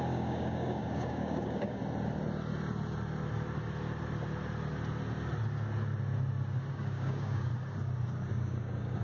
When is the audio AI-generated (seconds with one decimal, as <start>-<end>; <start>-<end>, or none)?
0.0-1.8; 6.7-7.5; 8.3-9.0